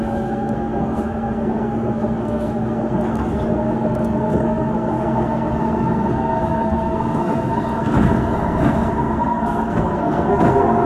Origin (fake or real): fake